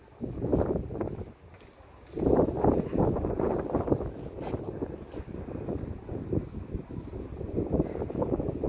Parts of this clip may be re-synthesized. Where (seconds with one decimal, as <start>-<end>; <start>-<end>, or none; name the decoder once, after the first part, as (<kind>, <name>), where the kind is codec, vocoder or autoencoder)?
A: none